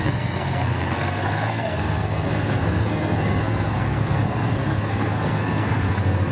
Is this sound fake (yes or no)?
yes